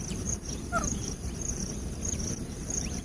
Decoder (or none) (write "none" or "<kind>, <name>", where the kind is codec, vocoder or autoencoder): vocoder, BigVGAN v2